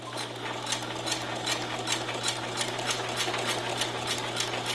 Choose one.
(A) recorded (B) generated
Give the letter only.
A